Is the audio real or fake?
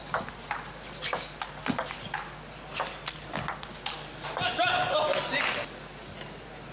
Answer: real